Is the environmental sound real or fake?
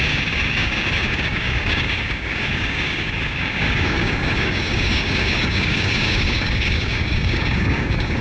fake